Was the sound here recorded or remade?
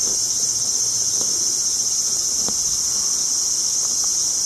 recorded